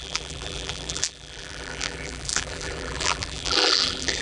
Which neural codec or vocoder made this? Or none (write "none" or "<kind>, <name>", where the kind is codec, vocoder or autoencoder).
vocoder, BigVGAN v2